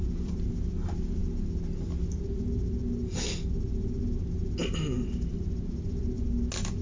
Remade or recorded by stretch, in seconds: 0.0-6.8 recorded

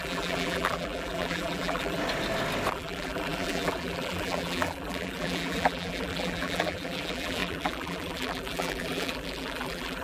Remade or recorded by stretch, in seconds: 0.0-2.0 remade; 2.0-2.7 recorded; 2.7-10.0 remade

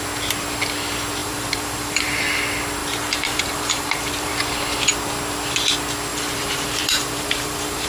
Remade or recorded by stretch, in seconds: 0.0-1.2 recorded; 1.2-2.2 remade; 2.2-2.8 recorded; 2.8-4.3 remade; 4.3-6.1 recorded; 6.1-7.9 remade